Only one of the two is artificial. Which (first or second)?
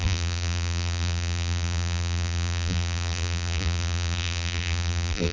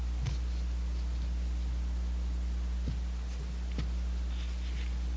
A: first